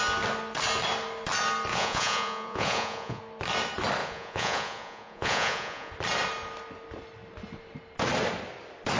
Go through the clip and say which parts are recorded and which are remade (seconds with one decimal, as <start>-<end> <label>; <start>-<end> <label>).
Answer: 0.0-1.7 recorded; 1.7-3.2 remade; 3.2-4.0 recorded; 4.0-5.9 remade; 5.9-9.0 recorded